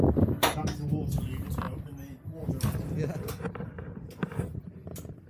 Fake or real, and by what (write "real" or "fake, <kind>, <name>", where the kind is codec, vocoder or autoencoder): real